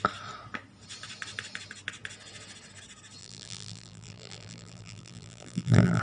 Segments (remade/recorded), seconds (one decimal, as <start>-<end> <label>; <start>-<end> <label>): 0.0-3.2 recorded; 3.2-6.0 remade